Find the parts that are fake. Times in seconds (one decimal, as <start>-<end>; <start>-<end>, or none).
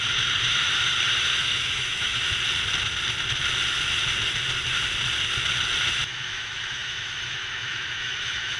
1.4-2.2; 6.1-8.6